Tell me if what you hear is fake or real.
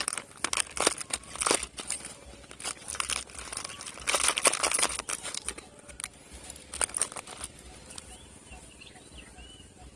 real